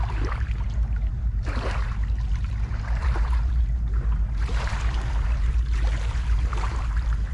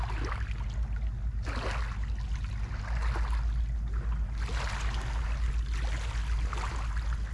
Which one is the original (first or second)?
second